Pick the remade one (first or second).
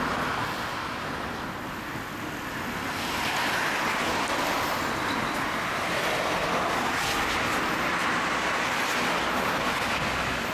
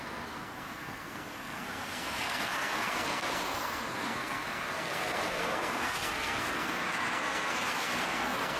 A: second